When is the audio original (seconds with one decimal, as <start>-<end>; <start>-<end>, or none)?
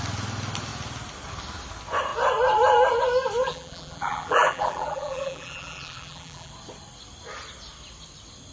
0.0-3.4; 6.5-8.5